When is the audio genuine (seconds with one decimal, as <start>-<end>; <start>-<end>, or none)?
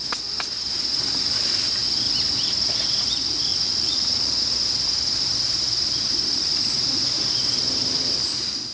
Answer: 0.0-3.5; 4.3-8.7